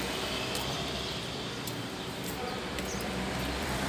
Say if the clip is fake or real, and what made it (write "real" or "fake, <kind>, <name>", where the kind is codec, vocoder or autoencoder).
fake, vocoder, BigVGAN v2